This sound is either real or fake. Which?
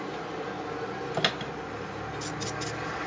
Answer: real